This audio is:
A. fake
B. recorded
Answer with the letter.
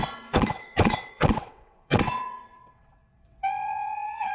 A